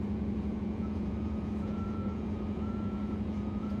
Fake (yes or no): yes